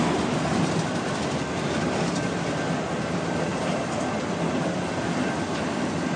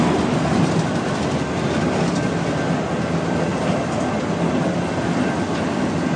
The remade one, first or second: first